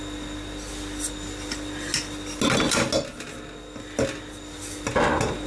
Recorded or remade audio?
recorded